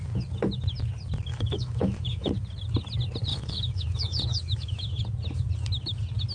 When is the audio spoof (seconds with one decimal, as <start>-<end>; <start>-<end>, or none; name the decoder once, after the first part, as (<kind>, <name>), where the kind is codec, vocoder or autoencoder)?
1.3-2.3 (autoencoder, DAC-VAE); 3.3-5.0